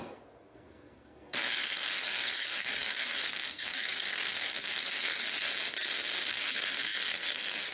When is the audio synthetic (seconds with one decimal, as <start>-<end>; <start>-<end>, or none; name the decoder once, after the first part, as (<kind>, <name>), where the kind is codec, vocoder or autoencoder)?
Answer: 0.0-5.5 (codec, SNAC); 6.3-7.7